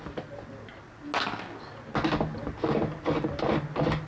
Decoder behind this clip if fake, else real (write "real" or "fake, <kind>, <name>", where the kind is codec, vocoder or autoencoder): real